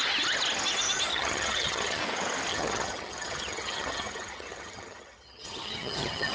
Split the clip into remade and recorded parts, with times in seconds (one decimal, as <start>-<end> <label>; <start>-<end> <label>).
0.0-1.1 recorded; 1.1-2.0 remade; 2.0-2.5 recorded; 2.5-6.3 remade